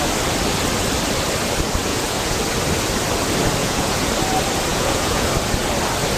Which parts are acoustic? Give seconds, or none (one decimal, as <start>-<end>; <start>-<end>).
0.0-1.9; 2.4-3.6; 4.1-4.7; 5.3-6.2